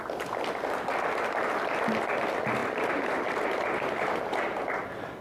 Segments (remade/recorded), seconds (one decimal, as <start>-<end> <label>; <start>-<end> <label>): 0.0-2.6 recorded; 2.6-4.6 remade; 4.6-5.2 recorded

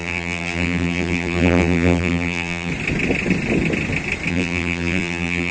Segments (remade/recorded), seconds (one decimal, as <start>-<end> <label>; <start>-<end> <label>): 0.0-2.7 remade; 2.7-4.3 recorded; 4.3-5.5 remade

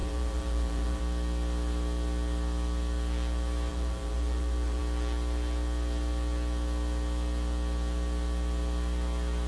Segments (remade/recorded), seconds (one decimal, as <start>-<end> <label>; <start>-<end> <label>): 0.0-1.0 remade; 1.0-3.7 recorded; 3.7-4.8 remade; 4.8-9.5 recorded

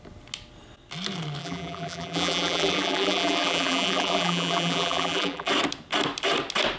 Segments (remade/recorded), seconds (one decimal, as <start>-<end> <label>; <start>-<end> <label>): 0.0-1.4 recorded; 1.4-5.5 remade; 5.5-6.8 recorded

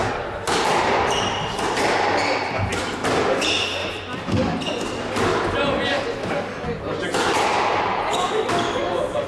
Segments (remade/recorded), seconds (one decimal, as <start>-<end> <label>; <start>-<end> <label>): 0.0-1.2 remade; 1.2-3.8 recorded; 3.8-4.4 remade; 4.4-9.3 recorded

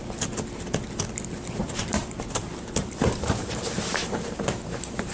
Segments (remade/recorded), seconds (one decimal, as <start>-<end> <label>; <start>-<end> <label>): 0.0-1.6 recorded; 1.6-5.1 remade

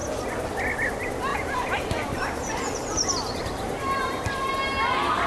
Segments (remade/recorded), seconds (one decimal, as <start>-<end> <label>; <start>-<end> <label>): 0.0-1.3 recorded; 1.3-4.5 remade; 4.5-5.3 recorded